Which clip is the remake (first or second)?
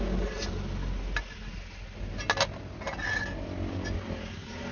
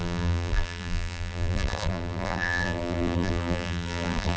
second